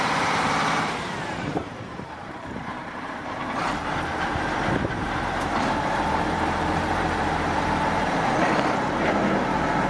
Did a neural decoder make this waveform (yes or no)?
yes